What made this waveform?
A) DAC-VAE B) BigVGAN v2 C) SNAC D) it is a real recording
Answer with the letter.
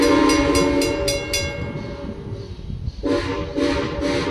D